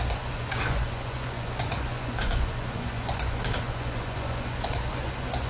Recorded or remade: remade